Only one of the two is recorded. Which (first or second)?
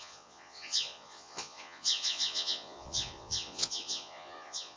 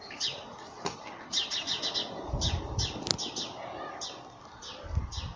second